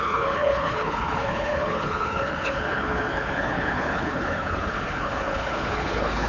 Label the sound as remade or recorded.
remade